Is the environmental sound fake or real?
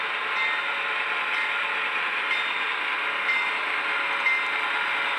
real